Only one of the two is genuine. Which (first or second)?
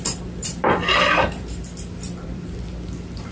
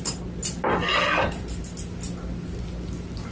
second